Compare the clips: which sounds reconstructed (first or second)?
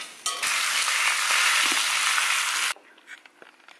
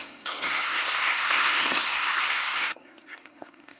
second